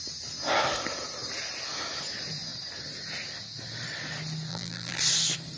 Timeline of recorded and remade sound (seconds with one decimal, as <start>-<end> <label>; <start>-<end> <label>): 0.0-4.5 recorded; 4.5-5.0 remade; 5.0-5.6 recorded